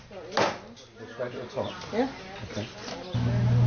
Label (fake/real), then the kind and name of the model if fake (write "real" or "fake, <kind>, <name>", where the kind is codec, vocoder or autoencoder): real